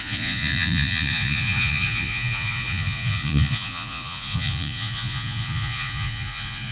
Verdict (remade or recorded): remade